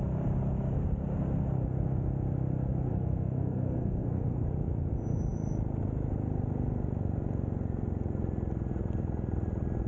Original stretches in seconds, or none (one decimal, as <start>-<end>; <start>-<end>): 0.0-2.9; 4.5-9.9